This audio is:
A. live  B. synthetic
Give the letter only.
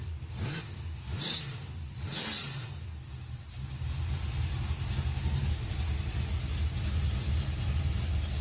A